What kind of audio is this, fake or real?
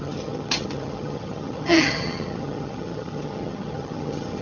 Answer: fake